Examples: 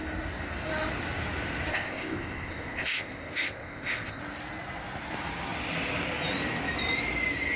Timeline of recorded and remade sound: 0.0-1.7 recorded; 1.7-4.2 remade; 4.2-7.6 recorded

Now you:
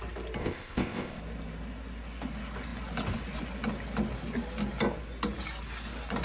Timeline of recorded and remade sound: 0.0-0.4 recorded; 0.4-1.2 remade; 1.2-6.2 recorded